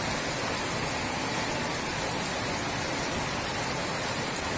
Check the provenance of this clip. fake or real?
real